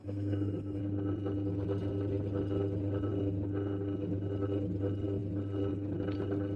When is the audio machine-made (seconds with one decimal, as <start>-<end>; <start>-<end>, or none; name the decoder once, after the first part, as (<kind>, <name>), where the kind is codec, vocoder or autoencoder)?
0.0-0.8 (codec, SNAC)